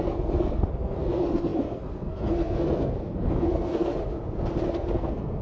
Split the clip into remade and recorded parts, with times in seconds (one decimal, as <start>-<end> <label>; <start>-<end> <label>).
0.0-3.9 remade; 3.9-4.7 recorded; 4.7-5.4 remade